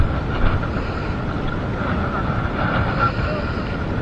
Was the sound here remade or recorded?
recorded